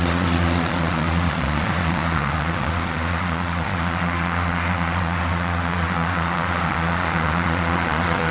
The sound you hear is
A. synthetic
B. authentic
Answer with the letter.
A